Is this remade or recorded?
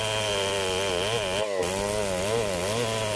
recorded